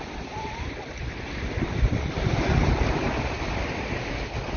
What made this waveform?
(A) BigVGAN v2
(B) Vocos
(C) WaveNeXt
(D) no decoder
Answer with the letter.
D